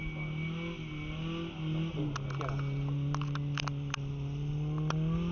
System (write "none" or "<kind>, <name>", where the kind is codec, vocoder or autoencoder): none